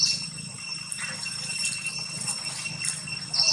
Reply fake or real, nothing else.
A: real